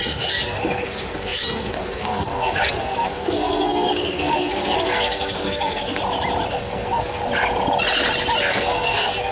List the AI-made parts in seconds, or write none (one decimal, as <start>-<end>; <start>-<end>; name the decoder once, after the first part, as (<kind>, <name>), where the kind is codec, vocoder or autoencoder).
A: 0.0-6.0 (codec, SNAC); 6.5-7.2; 8.5-9.3